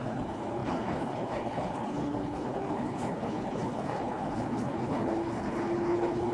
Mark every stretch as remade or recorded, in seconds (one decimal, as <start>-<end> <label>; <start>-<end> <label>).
0.0-6.3 remade